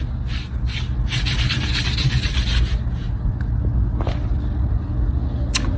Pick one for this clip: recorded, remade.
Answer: recorded